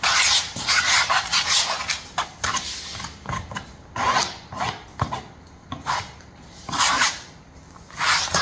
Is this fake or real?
real